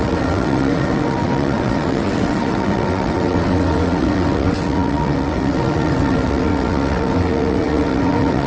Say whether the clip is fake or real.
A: fake